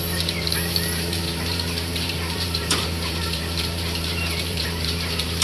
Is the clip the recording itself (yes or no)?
no